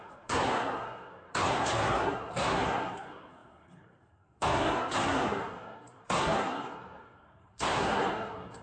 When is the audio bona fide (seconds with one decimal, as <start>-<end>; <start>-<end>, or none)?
none

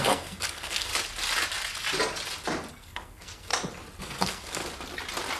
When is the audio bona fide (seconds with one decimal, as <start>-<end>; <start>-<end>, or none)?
0.9-2.7; 3.5-4.0; 4.6-5.4

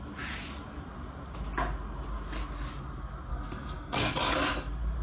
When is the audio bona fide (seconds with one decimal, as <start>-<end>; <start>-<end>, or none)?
0.0-3.3; 4.0-5.0

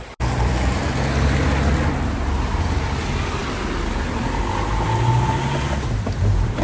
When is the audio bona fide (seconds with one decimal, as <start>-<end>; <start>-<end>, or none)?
0.0-6.6